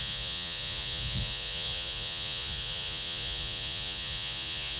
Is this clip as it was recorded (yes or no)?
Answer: no